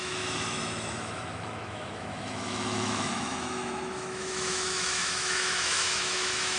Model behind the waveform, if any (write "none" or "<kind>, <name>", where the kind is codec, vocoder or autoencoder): autoencoder, DAC-VAE